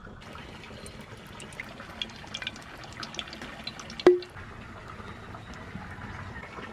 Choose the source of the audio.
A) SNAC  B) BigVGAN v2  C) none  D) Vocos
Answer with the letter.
C